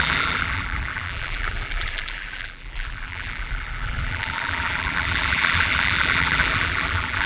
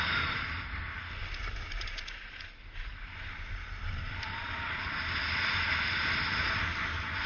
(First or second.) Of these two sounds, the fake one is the first